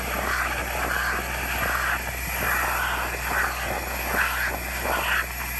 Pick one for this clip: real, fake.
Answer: real